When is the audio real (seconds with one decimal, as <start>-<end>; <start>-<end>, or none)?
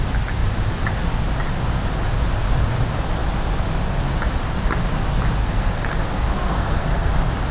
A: 0.0-5.4; 7.1-7.5